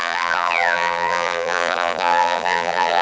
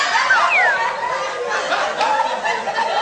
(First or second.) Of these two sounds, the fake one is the first